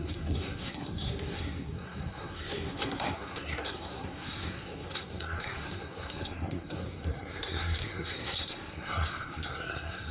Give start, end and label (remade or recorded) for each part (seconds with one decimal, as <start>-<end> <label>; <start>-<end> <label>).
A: 0.0-10.1 remade